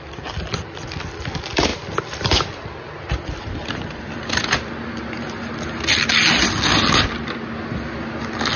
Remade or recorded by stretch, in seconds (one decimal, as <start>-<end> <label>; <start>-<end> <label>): 0.0-8.6 recorded